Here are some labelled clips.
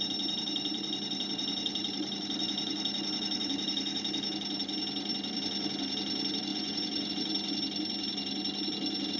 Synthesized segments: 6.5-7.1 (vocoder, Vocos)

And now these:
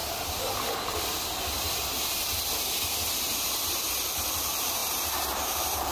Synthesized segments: 3.1-5.9 (vocoder, BigVGAN v2)

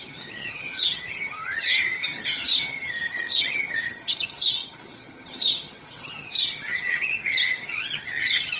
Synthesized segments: 0.0-8.6 (vocoder, HiFi-GAN)

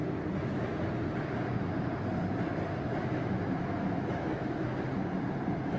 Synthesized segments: 0.0-0.8 (autoencoder, DAC-VAE); 3.0-4.7

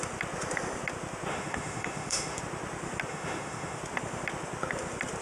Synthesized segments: 1.3-2.4 (autoencoder, DAC-VAE); 3.1-3.8